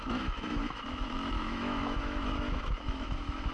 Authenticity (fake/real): fake